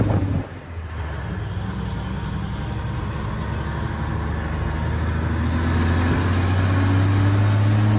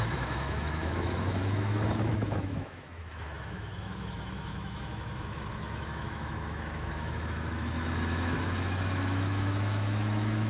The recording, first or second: first